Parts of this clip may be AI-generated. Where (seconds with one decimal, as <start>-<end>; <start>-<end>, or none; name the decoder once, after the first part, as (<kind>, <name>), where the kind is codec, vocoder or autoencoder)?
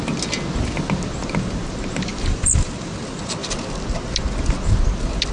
2.1-3.0 (vocoder, BigVGAN v2)